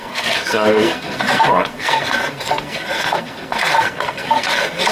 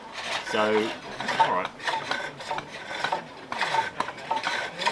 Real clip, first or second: second